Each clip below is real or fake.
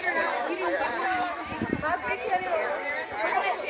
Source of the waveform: real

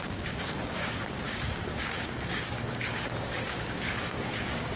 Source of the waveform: fake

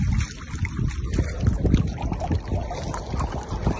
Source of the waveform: real